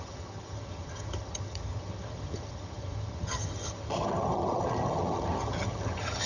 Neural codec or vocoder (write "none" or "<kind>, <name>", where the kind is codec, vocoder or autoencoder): vocoder, HiFi-GAN